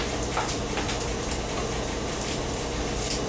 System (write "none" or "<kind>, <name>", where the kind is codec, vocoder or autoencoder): vocoder, BigVGAN v2